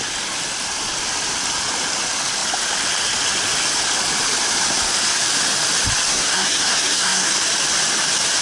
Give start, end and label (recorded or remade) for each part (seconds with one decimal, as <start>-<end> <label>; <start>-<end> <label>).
0.0-6.1 recorded; 6.1-7.3 remade; 7.3-8.4 recorded